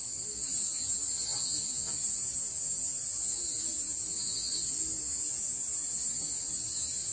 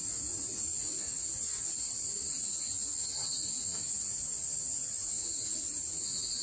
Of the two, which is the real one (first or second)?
first